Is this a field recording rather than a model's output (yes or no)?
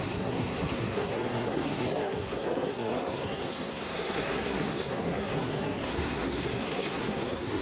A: no